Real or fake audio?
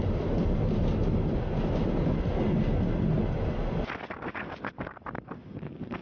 real